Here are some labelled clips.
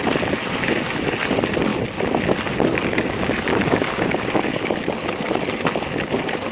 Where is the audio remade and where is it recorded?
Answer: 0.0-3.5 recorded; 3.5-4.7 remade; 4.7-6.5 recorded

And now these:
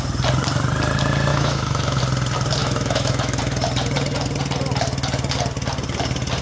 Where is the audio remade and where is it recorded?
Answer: 0.0-1.3 recorded; 1.3-2.0 remade; 2.0-2.6 recorded; 2.6-3.4 remade; 3.4-6.4 recorded

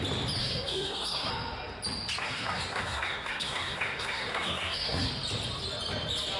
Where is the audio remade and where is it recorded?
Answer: 0.0-0.4 recorded; 0.4-1.3 remade; 1.3-2.2 recorded; 2.2-5.1 remade; 5.1-6.4 recorded

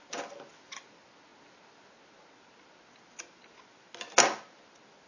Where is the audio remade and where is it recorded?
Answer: 0.0-5.1 recorded

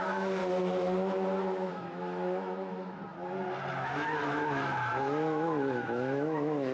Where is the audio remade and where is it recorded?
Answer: 0.0-0.4 remade; 0.4-1.7 recorded; 1.7-3.0 remade; 3.0-3.7 recorded; 3.7-6.7 remade